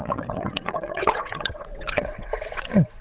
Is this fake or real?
fake